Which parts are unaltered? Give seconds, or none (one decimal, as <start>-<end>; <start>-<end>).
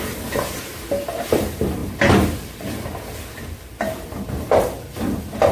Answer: 0.0-5.5